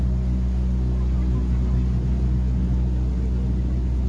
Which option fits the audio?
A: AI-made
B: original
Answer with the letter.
B